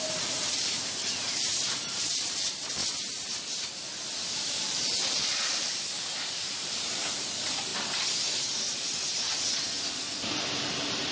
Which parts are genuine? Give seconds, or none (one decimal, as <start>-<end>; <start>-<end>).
2.8-4.3; 7.7-10.3